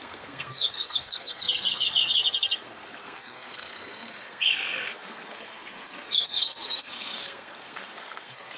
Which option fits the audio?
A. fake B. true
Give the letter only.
A